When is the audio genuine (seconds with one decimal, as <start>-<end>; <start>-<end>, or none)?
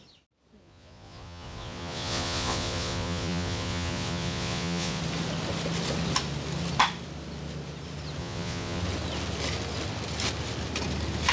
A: 0.0-0.6; 5.0-8.2; 8.8-11.3